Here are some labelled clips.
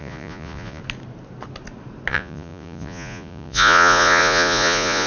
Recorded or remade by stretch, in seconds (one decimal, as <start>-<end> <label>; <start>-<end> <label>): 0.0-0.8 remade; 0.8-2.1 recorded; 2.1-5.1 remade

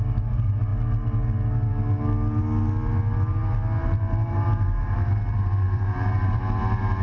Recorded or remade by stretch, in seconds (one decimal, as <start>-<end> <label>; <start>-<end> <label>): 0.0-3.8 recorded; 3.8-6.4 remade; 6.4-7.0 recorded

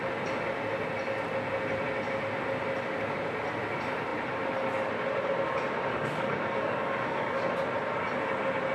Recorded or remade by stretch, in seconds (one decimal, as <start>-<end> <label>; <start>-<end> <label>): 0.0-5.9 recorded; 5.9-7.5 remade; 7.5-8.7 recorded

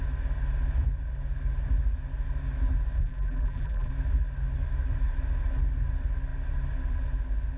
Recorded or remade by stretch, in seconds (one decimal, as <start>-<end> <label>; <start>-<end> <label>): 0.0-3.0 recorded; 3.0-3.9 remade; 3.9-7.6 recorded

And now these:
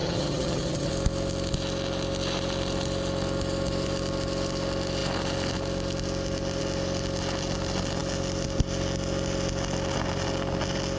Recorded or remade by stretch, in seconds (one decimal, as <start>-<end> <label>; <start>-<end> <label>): 0.0-0.9 remade; 0.9-11.0 recorded

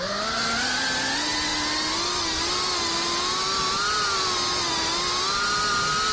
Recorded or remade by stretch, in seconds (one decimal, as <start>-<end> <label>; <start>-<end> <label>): 0.0-6.1 recorded

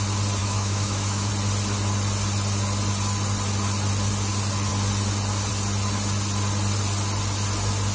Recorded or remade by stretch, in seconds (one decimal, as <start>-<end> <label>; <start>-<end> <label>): 0.0-0.4 recorded; 0.4-1.3 remade; 1.3-7.9 recorded

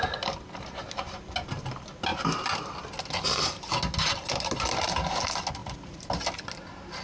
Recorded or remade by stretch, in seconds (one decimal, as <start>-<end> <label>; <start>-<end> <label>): 0.0-5.6 recorded; 5.6-6.5 remade; 6.5-7.0 recorded